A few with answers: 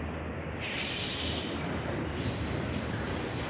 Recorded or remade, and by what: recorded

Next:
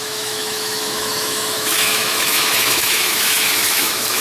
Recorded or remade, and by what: remade, autoencoder, DAC-VAE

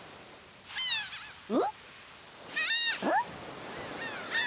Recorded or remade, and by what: recorded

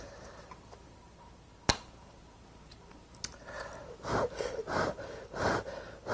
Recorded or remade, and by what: remade, vocoder, BigVGAN v2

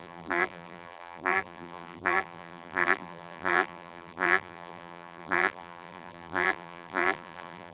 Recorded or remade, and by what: remade, vocoder, BigVGAN v2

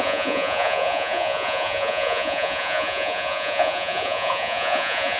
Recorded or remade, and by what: remade, vocoder, Vocos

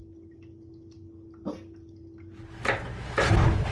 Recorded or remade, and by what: recorded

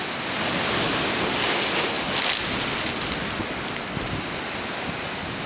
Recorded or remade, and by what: recorded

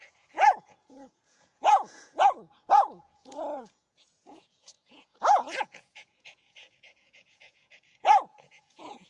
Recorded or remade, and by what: remade, vocoder, Vocos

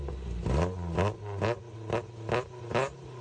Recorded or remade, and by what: recorded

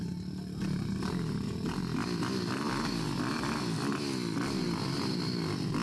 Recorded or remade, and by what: recorded